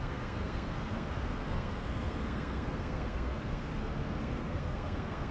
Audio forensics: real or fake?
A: fake